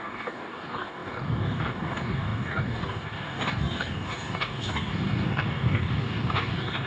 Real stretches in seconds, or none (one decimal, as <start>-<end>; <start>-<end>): none